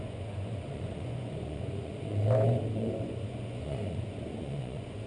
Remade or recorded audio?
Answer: remade